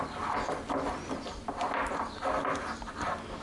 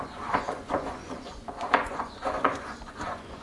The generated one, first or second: second